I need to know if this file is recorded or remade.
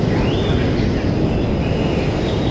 recorded